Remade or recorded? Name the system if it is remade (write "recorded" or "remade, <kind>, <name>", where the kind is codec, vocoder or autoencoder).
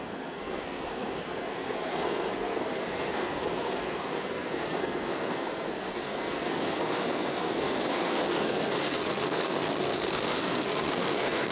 remade, codec, SNAC